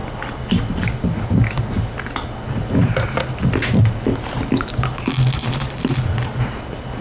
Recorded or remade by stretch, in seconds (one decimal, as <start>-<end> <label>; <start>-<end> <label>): 0.0-5.4 recorded; 5.4-6.4 remade; 6.4-7.0 recorded